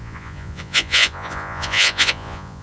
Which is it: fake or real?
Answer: fake